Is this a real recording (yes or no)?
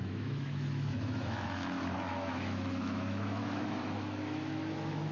no